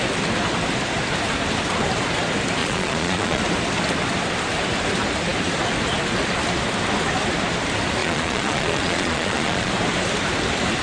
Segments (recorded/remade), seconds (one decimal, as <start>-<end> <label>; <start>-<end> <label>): 0.0-2.6 recorded; 2.6-3.4 remade; 3.4-8.0 recorded; 8.0-9.7 remade; 9.7-10.8 recorded

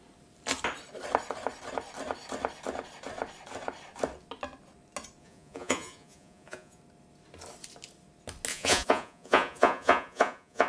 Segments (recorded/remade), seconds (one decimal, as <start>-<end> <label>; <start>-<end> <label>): 0.0-5.2 recorded; 5.2-6.8 remade; 6.8-8.5 recorded; 8.5-10.7 remade